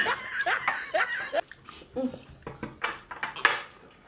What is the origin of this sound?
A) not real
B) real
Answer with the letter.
B